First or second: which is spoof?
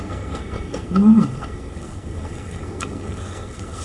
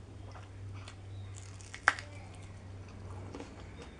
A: first